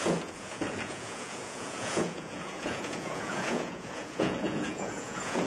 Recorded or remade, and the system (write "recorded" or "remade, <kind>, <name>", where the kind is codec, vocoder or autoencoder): remade, vocoder, Vocos